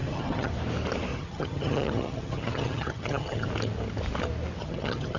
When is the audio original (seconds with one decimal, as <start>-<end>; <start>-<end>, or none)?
0.5-1.1; 3.5-4.6